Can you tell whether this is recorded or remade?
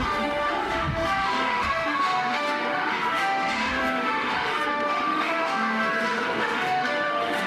remade